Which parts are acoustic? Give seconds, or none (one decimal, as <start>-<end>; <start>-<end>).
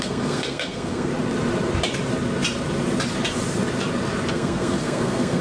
1.1-4.3